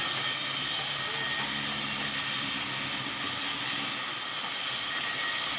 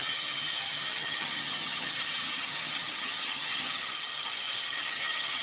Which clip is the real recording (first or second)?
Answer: first